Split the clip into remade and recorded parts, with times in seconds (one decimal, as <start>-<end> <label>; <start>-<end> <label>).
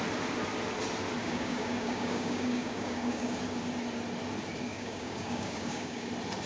0.0-1.2 recorded; 1.2-3.3 remade; 3.3-4.7 recorded; 4.7-6.1 remade; 6.1-6.5 recorded